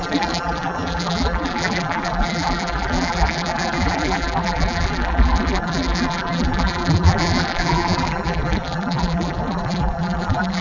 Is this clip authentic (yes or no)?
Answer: no